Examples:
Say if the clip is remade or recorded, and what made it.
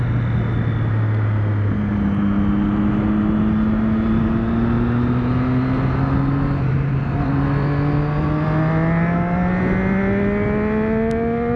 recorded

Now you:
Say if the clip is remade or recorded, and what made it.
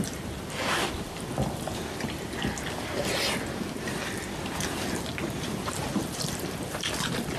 remade, vocoder, BigVGAN v2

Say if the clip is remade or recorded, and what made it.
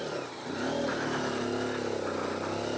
recorded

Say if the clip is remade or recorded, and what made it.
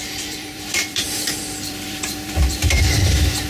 remade, vocoder, BigVGAN v2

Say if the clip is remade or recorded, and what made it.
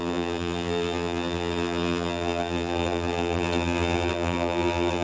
remade, vocoder, BigVGAN v2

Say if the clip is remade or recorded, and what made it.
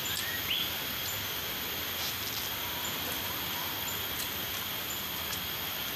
recorded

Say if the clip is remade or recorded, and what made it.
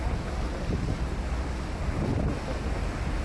recorded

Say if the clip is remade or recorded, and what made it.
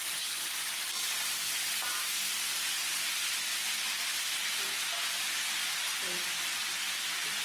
recorded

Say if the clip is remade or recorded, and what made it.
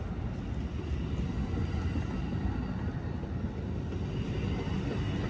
recorded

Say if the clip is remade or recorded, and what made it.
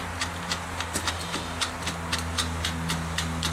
recorded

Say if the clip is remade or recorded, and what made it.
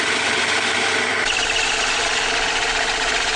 remade, vocoder, BigVGAN v2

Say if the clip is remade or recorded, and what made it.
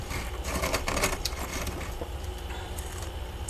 remade, vocoder, BigVGAN v2